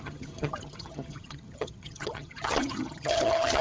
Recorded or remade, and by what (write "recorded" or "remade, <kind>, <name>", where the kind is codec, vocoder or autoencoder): remade, vocoder, HiFi-GAN